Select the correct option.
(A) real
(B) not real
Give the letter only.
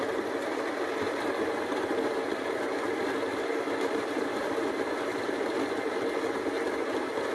A